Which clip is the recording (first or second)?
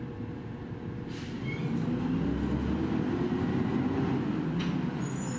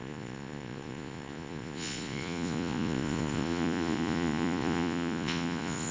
first